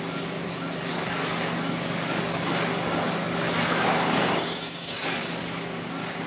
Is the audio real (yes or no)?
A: no